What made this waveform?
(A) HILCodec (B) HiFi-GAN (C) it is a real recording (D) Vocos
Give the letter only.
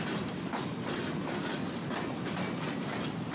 C